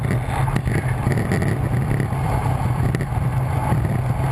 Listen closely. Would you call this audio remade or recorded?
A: recorded